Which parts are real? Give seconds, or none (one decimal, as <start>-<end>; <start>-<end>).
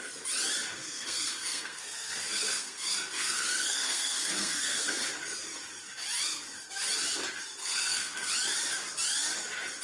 0.0-0.7; 5.0-7.6; 8.3-9.8